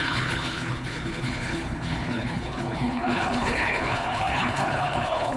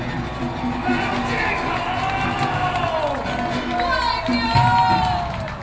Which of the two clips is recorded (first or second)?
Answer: second